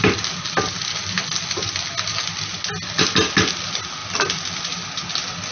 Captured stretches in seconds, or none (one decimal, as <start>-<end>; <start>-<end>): 0.0-5.5